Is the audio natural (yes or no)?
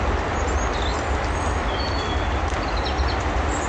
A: yes